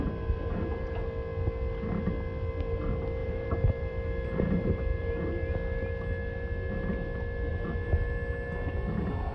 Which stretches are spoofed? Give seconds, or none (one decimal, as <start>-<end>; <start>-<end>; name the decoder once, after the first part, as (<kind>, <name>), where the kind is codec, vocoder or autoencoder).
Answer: 3.2-5.0 (vocoder, BigVGAN v2)